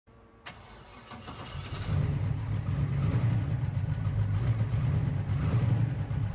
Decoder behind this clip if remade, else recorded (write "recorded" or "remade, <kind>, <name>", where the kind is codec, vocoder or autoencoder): recorded